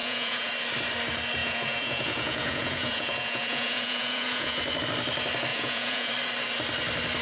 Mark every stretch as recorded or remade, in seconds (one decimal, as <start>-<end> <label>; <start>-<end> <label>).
0.0-0.5 remade; 0.5-1.4 recorded; 1.4-4.6 remade; 4.6-5.5 recorded; 5.5-6.1 remade; 6.1-7.2 recorded